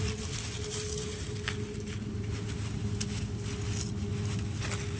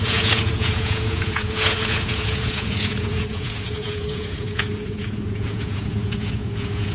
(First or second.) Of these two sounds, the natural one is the first